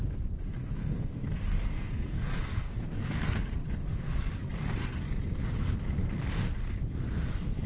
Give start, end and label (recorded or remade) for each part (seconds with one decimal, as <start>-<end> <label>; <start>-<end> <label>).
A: 0.0-0.6 recorded; 0.6-3.4 remade; 3.4-3.8 recorded; 3.8-4.5 remade; 4.5-7.7 recorded